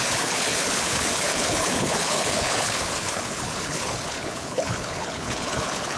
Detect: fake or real fake